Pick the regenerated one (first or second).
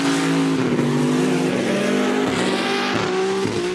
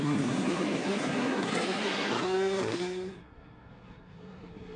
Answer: second